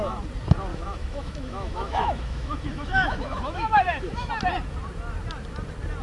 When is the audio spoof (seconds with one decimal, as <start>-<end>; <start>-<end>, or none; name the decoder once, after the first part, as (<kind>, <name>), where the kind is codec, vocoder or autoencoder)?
0.7-4.3 (autoencoder, DAC-VAE)